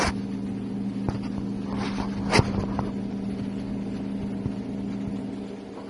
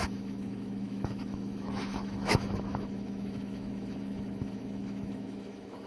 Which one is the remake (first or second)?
second